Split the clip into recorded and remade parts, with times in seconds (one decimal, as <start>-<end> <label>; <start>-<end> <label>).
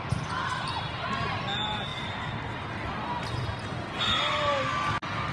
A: 0.0-5.3 recorded